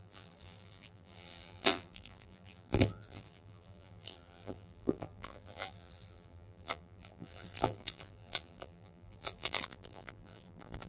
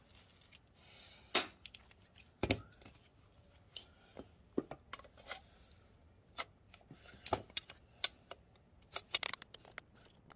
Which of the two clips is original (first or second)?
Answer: second